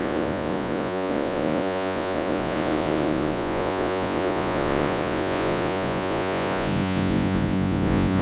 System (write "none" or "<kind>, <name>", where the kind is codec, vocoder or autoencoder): vocoder, Vocos